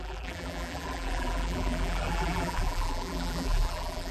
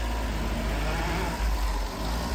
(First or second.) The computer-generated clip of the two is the first